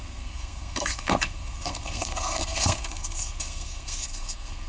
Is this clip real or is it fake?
fake